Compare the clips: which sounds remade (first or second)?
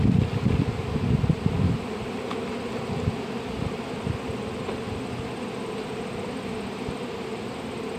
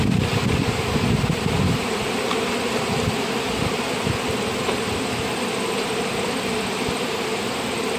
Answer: second